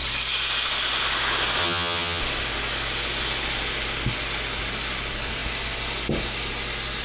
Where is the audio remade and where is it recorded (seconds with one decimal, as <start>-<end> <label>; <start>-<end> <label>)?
0.0-1.6 recorded; 1.6-2.2 remade; 2.2-7.0 recorded